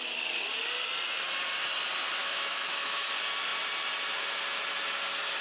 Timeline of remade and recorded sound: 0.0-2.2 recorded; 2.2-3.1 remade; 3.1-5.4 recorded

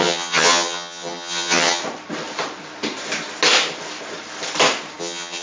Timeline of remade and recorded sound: 0.0-1.8 remade; 1.8-5.0 recorded; 5.0-5.4 remade

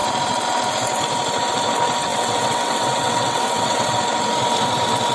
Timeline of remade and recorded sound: 0.0-2.1 recorded; 2.1-3.9 remade; 3.9-5.1 recorded

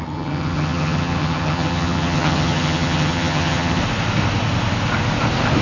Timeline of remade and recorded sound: 0.0-3.8 remade; 3.8-5.6 recorded

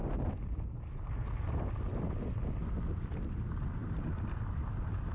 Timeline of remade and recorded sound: 0.0-5.1 recorded